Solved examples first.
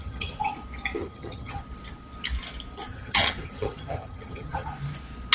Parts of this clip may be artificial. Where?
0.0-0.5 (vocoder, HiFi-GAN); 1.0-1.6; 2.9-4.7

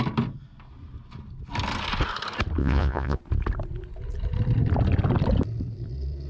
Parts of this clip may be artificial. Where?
2.6-3.2 (vocoder, Vocos)

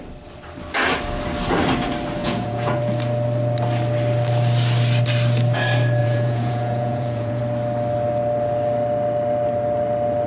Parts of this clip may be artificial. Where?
2.2-2.8 (vocoder, Vocos); 6.0-7.4